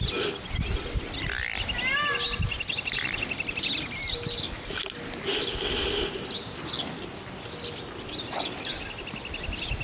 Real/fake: real